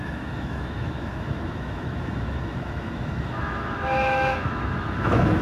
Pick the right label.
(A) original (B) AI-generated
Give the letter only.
B